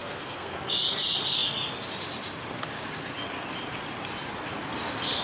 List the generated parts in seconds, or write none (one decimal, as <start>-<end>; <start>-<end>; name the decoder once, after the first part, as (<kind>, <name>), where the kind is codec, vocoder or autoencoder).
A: 0.0-0.6 (codec, SNAC)